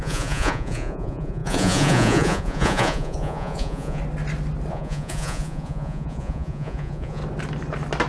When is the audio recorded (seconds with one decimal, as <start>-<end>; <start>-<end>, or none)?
4.0-4.7; 7.2-8.1